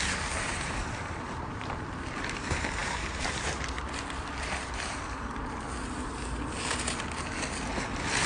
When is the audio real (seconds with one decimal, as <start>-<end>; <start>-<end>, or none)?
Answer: 0.0-2.8; 5.4-8.3